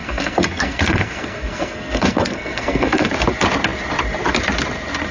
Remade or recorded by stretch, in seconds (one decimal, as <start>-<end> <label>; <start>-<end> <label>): 0.0-3.1 remade; 3.1-5.1 recorded